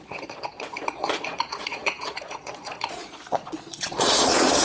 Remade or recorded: remade